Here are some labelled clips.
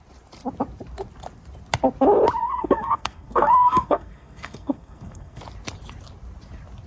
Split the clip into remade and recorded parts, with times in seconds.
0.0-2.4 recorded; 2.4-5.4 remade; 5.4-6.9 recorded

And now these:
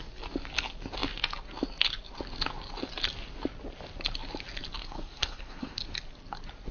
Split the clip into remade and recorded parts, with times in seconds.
0.0-4.8 recorded; 4.8-5.8 remade; 5.8-6.7 recorded